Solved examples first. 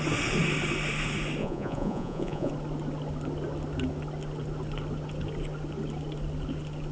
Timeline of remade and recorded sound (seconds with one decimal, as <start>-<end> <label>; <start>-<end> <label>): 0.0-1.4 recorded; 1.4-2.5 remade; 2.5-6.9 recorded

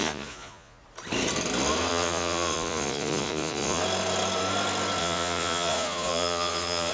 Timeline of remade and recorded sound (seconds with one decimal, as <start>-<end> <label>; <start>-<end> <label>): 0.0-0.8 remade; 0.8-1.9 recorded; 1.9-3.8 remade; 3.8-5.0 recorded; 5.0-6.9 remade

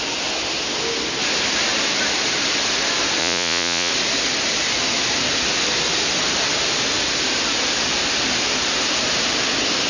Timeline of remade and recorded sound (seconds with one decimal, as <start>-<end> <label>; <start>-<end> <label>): 0.0-3.2 recorded; 3.2-3.9 remade; 3.9-9.9 recorded